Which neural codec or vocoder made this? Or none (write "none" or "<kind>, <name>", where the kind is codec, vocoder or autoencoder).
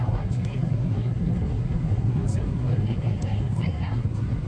codec, SNAC